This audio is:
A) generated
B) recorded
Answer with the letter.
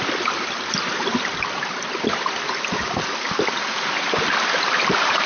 B